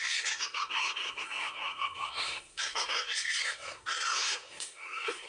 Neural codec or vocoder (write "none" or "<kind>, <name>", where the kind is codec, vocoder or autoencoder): codec, SNAC